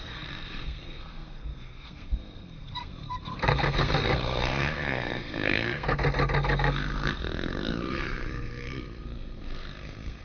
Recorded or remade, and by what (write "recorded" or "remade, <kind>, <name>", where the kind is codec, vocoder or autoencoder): remade, codec, SNAC